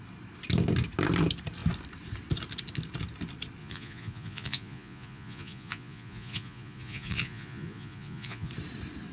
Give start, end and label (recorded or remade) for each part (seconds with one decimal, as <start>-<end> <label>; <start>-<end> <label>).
0.0-3.6 recorded; 3.6-8.5 remade; 8.5-9.1 recorded